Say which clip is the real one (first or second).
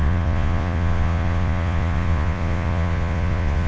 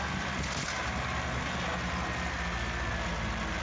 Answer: second